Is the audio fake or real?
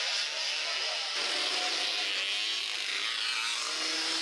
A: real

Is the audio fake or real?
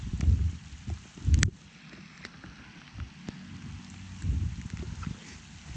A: real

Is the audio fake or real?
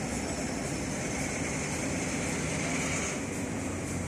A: real